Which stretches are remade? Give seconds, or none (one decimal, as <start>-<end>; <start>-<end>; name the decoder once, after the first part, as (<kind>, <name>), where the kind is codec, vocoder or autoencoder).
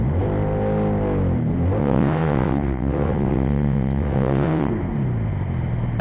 1.8-4.7 (vocoder, WaveNeXt)